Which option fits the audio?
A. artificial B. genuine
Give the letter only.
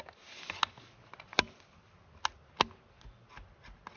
B